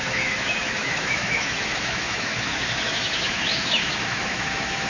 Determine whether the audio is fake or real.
fake